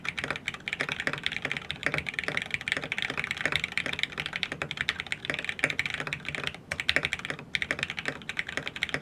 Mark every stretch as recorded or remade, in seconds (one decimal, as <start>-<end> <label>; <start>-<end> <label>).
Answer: 0.0-1.8 recorded; 1.8-5.2 remade; 5.2-9.0 recorded